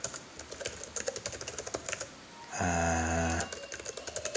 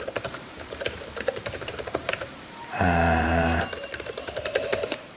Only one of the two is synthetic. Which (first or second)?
second